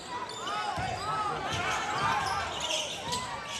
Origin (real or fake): real